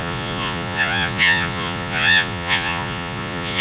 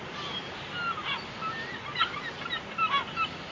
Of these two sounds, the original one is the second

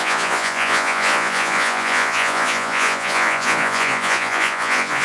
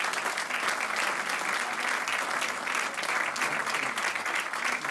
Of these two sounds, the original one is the second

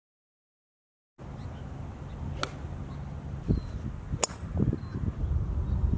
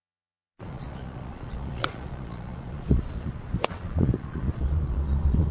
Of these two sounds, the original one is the first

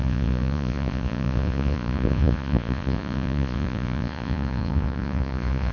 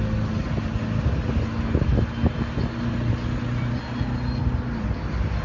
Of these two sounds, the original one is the second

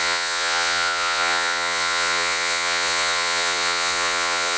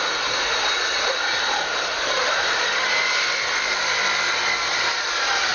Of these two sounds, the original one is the second